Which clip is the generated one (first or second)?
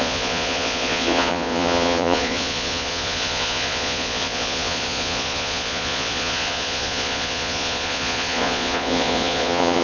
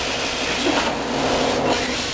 first